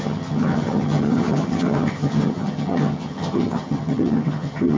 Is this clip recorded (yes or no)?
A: no